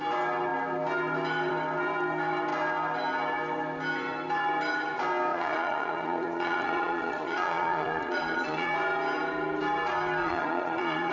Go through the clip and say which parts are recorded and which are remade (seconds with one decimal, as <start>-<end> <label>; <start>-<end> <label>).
0.0-5.3 recorded; 5.3-8.7 remade; 8.7-10.2 recorded; 10.2-11.1 remade